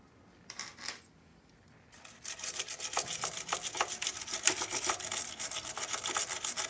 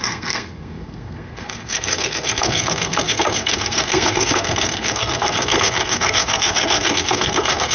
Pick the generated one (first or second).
second